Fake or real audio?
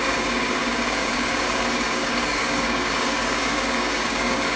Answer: fake